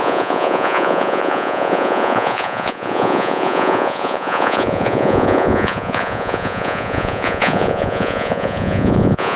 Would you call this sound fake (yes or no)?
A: yes